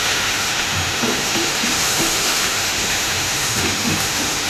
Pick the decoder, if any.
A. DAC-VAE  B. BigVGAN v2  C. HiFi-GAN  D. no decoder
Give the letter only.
A